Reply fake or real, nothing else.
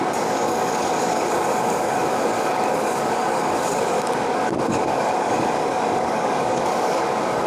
fake